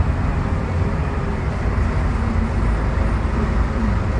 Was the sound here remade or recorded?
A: recorded